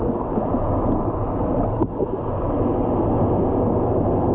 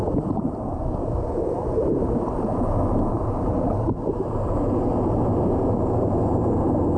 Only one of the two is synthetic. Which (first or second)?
second